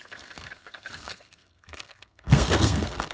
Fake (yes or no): yes